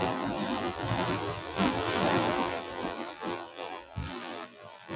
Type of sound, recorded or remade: remade